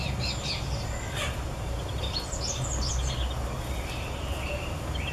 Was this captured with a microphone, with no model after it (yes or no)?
yes